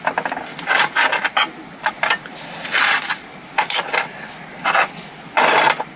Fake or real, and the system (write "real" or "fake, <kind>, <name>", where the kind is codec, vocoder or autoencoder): real